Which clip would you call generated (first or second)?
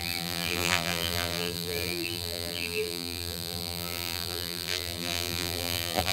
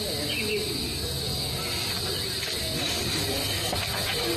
first